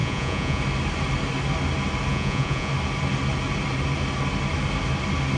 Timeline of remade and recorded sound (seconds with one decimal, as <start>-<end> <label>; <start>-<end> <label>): 0.0-0.6 remade; 0.6-2.1 recorded; 2.1-2.7 remade; 2.7-5.4 recorded

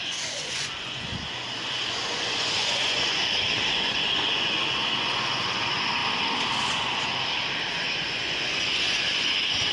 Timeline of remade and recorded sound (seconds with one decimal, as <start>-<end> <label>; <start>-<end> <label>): 0.0-3.2 remade; 3.2-3.7 recorded; 3.7-6.0 remade; 6.0-6.6 recorded; 6.6-7.1 remade; 7.1-7.7 recorded; 7.7-9.7 remade

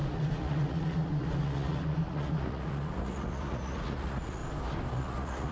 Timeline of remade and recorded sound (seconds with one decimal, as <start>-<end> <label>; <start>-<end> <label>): 0.0-4.4 remade; 4.4-4.9 recorded; 4.9-5.5 remade

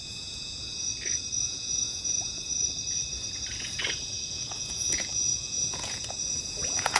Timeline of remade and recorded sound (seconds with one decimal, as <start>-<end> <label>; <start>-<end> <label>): 0.0-0.9 remade; 0.9-1.4 recorded; 1.4-2.5 remade; 2.5-4.3 recorded; 4.3-7.0 remade